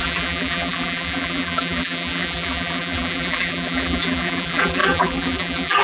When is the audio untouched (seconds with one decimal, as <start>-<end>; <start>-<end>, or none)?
none